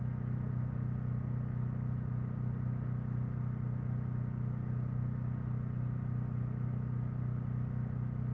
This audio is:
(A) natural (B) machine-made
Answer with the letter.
A